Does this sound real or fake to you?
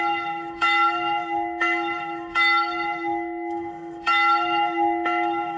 fake